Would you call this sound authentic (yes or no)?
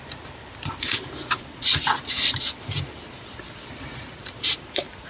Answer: no